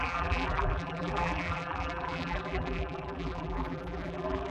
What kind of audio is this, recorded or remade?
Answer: remade